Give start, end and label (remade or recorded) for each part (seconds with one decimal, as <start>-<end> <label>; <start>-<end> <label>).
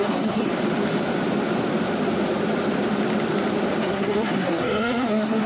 0.0-0.5 remade; 0.5-3.8 recorded; 3.8-5.5 remade